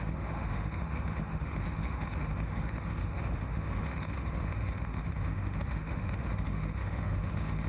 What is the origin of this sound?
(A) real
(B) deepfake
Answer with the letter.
B